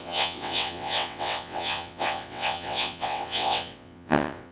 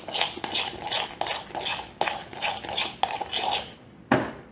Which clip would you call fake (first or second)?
first